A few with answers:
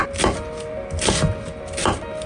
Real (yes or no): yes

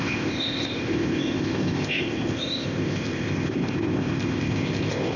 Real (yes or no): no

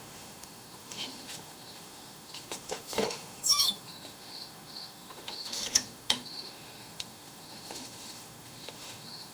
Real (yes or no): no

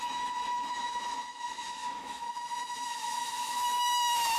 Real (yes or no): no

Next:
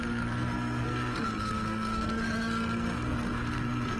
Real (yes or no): no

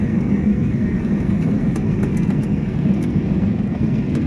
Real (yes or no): no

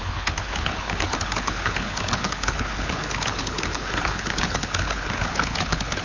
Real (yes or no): no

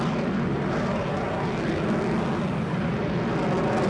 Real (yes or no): yes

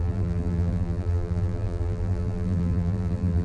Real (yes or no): no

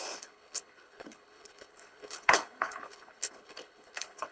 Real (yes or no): no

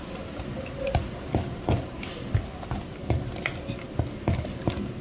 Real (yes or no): yes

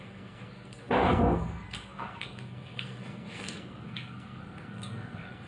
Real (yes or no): no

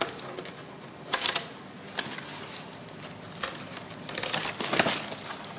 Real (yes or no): yes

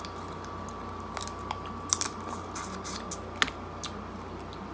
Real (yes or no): yes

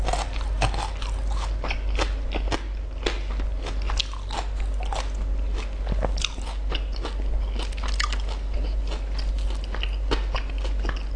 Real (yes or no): yes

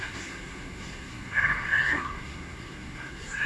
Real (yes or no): no